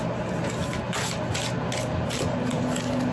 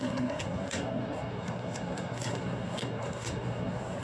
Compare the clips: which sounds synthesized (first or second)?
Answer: second